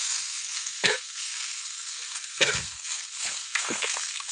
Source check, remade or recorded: remade